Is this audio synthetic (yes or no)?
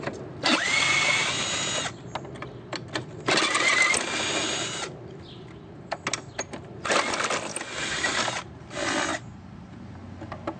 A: no